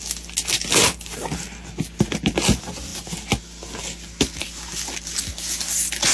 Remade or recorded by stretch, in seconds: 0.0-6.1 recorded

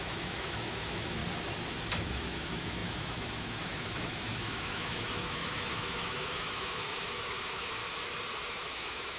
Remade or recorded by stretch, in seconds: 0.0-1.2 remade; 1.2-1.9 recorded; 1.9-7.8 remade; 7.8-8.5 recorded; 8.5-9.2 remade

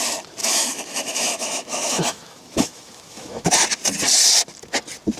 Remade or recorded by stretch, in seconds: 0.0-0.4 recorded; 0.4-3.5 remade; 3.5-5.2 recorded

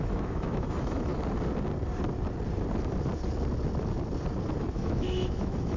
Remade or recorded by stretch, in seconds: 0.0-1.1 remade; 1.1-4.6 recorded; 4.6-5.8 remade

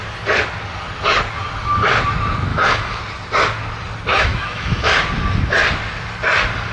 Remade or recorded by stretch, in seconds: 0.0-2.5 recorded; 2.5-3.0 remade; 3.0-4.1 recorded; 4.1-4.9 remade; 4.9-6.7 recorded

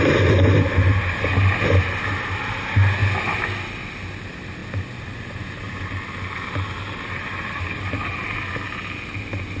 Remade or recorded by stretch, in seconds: 0.0-9.6 recorded